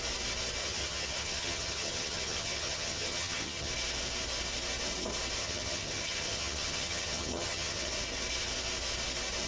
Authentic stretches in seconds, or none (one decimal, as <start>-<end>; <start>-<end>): 0.0-0.6; 3.7-5.4; 7.9-9.5

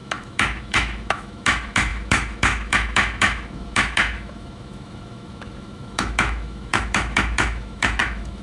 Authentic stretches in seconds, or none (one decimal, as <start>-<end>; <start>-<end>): none

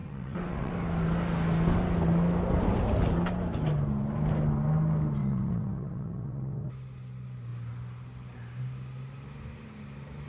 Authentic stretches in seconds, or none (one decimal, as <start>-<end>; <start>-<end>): 0.7-5.2; 6.7-10.3

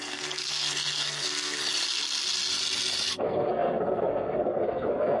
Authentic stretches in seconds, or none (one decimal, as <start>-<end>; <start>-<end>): 1.6-3.1

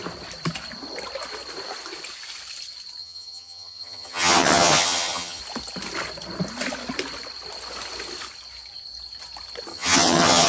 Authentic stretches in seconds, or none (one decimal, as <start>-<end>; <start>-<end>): 0.0-3.0; 5.4-9.7

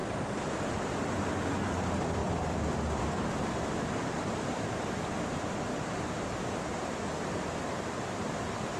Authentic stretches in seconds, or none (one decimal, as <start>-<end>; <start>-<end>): 0.7-2.2; 6.9-8.8

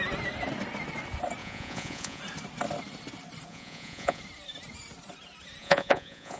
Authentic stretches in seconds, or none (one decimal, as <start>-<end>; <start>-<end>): 0.0-1.4; 2.2-3.5; 4.2-5.6